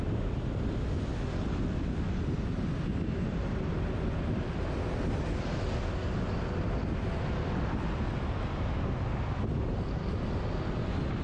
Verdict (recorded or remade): recorded